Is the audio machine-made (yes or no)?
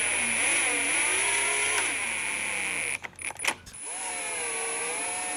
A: no